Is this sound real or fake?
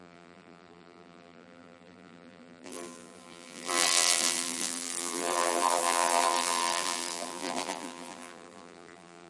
fake